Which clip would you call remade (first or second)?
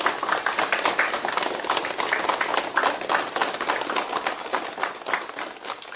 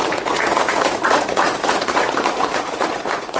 second